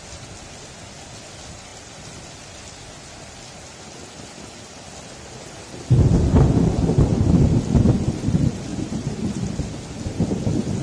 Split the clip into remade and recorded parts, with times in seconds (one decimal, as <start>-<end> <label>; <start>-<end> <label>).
0.0-10.8 recorded